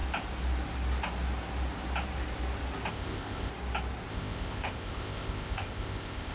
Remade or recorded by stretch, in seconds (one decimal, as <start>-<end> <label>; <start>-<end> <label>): 0.0-2.9 recorded; 2.9-3.5 remade; 3.5-4.1 recorded; 4.1-6.3 remade